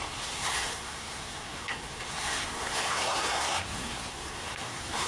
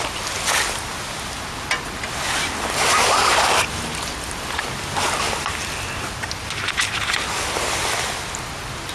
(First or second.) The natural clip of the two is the second